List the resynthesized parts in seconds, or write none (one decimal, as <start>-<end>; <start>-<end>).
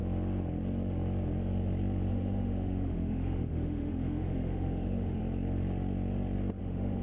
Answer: 2.1-5.2; 6.6-7.0